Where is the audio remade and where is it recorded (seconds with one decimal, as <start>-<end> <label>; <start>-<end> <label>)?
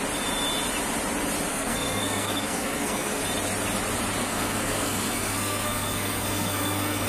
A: 0.0-1.5 recorded; 1.5-3.2 remade; 3.2-4.2 recorded; 4.2-7.1 remade